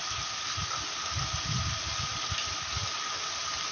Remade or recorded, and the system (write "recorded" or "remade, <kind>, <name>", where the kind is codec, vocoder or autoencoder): recorded